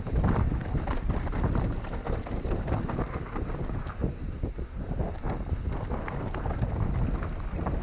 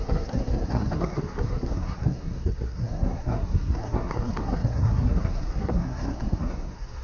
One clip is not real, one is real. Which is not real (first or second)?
second